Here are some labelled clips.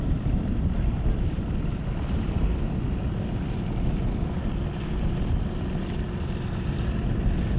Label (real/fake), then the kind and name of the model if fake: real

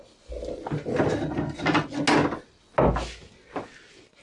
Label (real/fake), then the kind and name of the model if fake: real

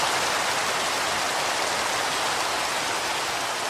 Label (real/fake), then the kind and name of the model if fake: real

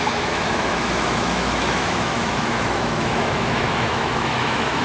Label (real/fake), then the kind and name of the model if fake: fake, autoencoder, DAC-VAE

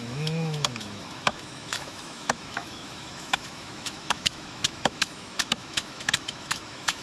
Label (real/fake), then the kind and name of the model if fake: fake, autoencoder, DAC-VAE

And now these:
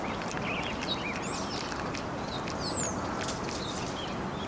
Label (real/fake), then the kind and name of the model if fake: real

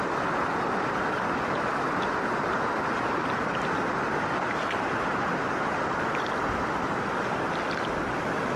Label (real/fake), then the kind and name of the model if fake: real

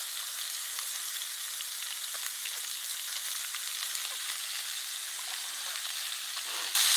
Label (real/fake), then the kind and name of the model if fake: real